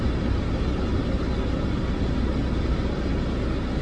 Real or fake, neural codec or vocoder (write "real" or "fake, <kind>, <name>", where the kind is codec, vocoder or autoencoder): real